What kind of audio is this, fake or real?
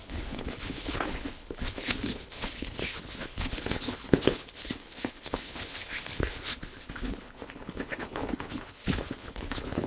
fake